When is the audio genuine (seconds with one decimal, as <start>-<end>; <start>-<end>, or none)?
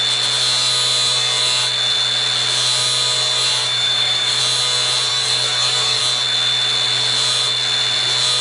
0.0-3.6; 4.4-5.1; 6.0-8.4